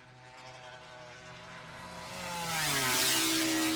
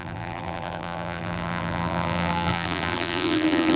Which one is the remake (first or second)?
second